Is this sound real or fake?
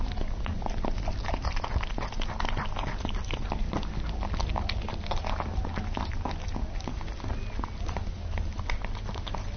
real